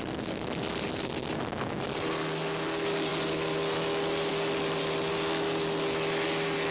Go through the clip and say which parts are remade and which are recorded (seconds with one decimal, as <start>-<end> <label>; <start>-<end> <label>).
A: 0.0-6.7 recorded